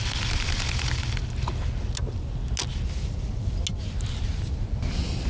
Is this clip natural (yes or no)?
yes